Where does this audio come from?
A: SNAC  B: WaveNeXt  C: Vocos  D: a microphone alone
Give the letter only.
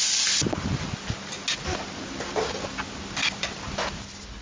D